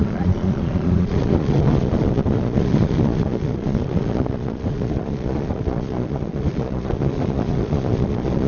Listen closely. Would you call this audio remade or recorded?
remade